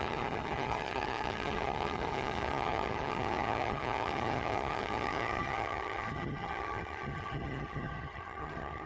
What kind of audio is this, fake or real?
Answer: fake